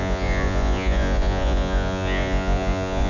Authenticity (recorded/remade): remade